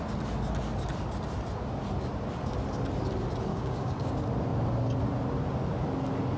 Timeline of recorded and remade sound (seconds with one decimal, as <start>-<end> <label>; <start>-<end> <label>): 0.0-3.5 recorded; 3.5-4.1 remade; 4.1-6.4 recorded